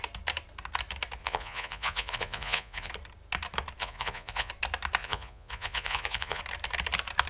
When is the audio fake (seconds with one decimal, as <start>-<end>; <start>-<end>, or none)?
1.2-2.9; 3.8-4.5; 5.0-6.4